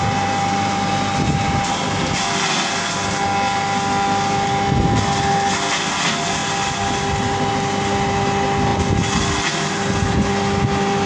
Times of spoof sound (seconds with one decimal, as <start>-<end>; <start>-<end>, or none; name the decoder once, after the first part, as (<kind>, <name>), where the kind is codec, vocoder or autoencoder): none